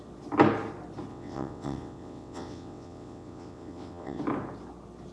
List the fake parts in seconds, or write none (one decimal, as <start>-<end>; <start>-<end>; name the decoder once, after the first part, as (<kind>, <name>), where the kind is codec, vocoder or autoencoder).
1.1-4.2 (vocoder, WaveNeXt)